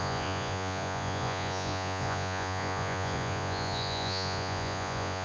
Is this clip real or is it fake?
fake